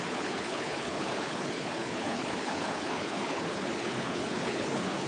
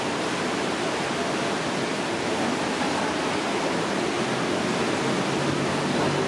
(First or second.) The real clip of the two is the second